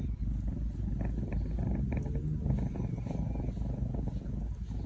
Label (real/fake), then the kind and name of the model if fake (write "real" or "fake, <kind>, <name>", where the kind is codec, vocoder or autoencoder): real